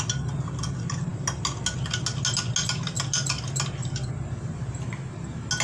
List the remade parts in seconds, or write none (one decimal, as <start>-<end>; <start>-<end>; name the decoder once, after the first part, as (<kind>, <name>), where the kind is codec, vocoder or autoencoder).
none